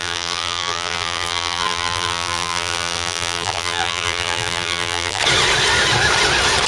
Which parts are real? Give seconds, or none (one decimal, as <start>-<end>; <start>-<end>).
5.2-6.7